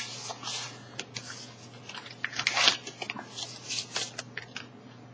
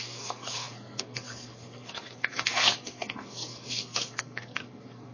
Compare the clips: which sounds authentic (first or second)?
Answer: first